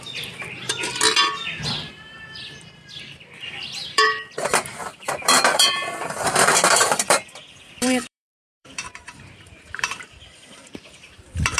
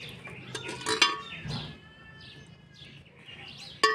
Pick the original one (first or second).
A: second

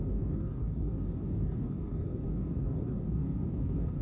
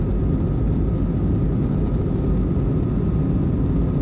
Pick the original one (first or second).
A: second